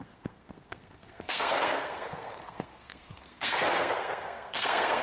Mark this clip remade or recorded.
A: remade